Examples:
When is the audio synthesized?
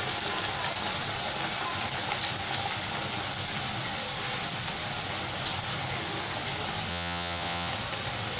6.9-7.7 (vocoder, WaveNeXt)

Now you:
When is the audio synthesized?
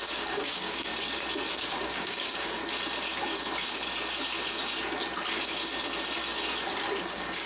0.0-0.9 (codec, DAC); 1.5-2.6; 7.0-7.5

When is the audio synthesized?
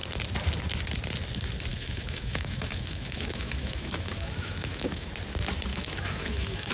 1.7-5.1 (autoencoder, DAC-VAE); 5.7-6.7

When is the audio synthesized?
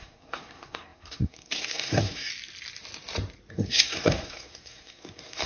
0.0-2.3 (codec, SNAC); 3.5-5.5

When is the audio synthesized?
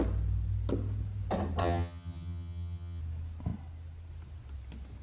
1.6-3.0 (vocoder, HiFi-GAN)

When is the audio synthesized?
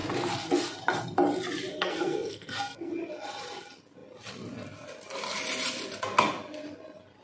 1.7-2.9 (codec, SNAC)